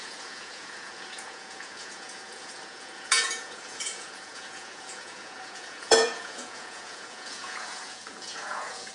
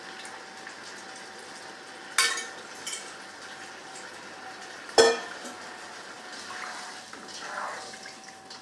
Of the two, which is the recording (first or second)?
second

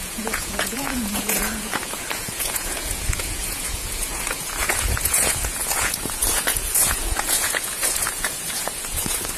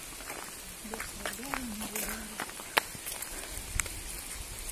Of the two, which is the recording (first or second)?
second